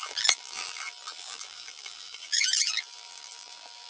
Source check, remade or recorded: remade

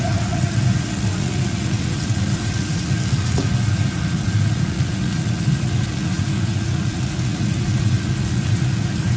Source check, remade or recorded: remade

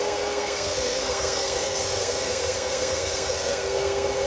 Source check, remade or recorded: remade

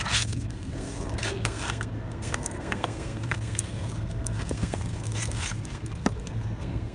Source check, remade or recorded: remade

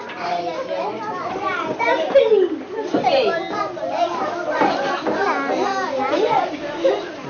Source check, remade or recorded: recorded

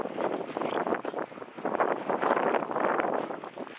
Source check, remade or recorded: recorded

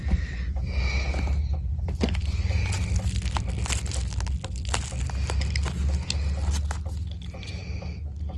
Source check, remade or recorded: recorded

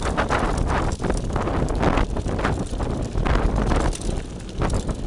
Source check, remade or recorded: recorded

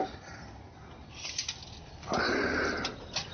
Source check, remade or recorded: recorded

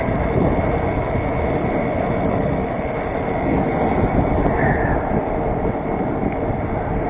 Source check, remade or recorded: recorded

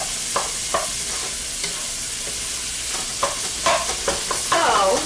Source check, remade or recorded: recorded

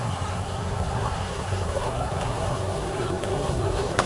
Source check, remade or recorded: remade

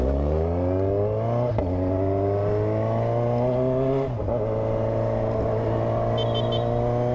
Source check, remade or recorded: recorded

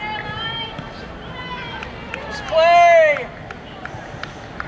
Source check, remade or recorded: recorded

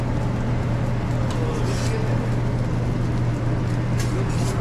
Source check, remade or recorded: recorded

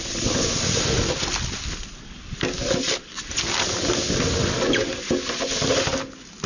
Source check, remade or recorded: recorded